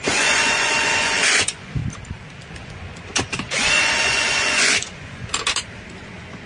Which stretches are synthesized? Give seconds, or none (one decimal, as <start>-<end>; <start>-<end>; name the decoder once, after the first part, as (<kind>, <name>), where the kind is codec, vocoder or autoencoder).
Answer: 0.0-1.8 (vocoder, Vocos); 2.5-5.3; 6.0-6.5